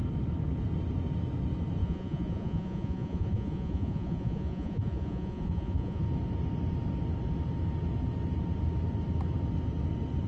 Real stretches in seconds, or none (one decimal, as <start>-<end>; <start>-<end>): 0.0-1.8; 6.0-10.3